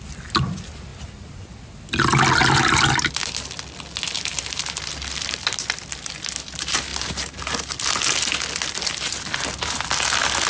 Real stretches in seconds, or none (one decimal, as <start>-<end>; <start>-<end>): 0.0-10.5